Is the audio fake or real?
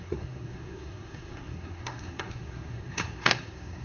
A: fake